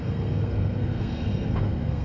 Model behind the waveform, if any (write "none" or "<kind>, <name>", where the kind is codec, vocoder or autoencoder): codec, SNAC